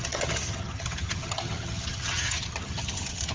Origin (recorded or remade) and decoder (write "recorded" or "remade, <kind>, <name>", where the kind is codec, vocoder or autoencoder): remade, vocoder, HiFi-GAN